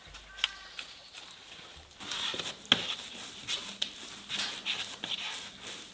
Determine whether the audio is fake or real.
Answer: real